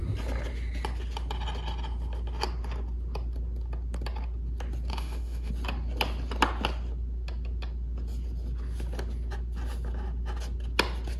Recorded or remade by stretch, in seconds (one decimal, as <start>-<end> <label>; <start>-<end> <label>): 0.0-4.9 recorded; 4.9-5.5 remade; 5.5-11.2 recorded